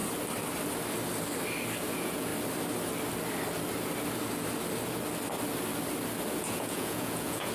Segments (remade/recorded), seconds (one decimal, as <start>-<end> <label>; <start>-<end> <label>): 0.0-1.9 recorded; 1.9-2.3 remade; 2.3-6.3 recorded; 6.3-7.5 remade

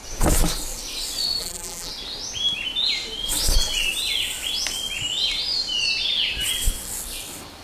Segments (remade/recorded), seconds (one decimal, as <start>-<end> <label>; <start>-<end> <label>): 0.0-1.4 recorded; 1.4-1.9 remade; 1.9-7.6 recorded

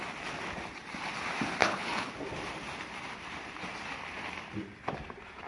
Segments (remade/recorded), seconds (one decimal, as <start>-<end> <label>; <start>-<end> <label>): 0.0-1.6 recorded; 1.6-2.1 remade; 2.1-5.5 recorded

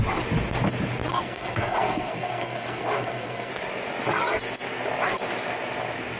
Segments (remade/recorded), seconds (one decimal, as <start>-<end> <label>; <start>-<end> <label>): 0.0-1.1 recorded; 1.1-3.5 remade; 3.5-6.2 recorded

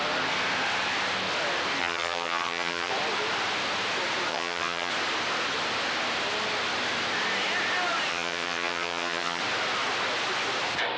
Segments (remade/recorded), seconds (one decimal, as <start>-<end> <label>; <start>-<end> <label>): 0.0-1.8 recorded; 1.8-2.9 remade; 2.9-4.3 recorded; 4.3-4.9 remade; 4.9-8.1 recorded; 8.1-9.4 remade; 9.4-11.0 recorded

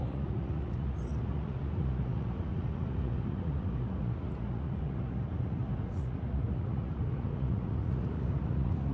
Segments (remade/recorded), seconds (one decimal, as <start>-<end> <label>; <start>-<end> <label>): 0.0-8.9 remade

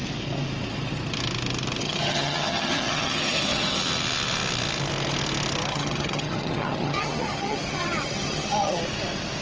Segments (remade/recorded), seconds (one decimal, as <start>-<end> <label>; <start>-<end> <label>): 0.0-1.8 recorded; 1.8-3.8 remade; 3.8-5.7 recorded; 5.7-8.8 remade; 8.8-9.4 recorded

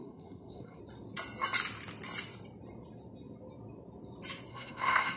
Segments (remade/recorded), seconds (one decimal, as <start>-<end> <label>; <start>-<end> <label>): 0.0-0.8 remade; 0.8-4.5 recorded; 4.5-5.2 remade